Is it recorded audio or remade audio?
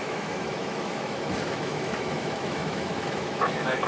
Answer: remade